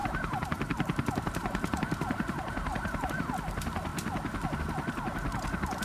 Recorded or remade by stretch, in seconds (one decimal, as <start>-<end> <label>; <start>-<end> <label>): 0.0-3.1 remade; 3.1-5.8 recorded